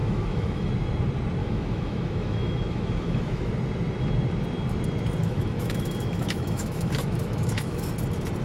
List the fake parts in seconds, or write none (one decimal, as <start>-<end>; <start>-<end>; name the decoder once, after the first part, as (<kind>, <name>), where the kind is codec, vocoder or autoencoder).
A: 0.0-0.7 (autoencoder, DAC-VAE); 1.4-3.5; 5.2-7.9